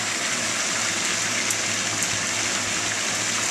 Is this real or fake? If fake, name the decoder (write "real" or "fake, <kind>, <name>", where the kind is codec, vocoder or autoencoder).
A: real